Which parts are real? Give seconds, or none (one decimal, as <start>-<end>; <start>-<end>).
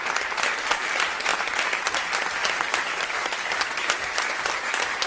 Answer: 0.0-5.1